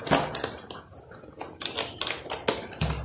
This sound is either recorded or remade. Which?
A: recorded